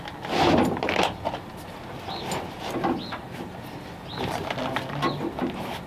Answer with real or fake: real